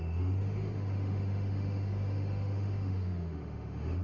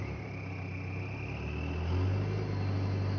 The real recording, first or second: second